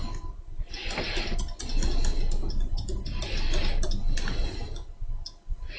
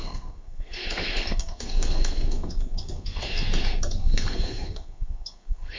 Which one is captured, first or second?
first